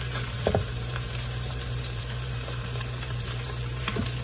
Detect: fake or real fake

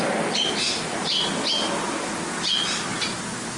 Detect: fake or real real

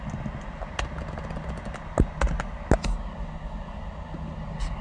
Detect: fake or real real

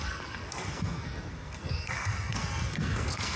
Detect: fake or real fake